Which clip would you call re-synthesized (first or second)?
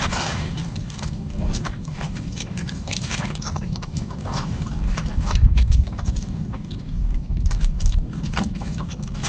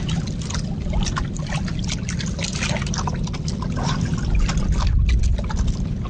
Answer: first